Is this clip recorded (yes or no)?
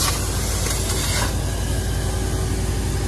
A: yes